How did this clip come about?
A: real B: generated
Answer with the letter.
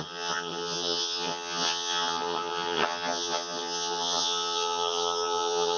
B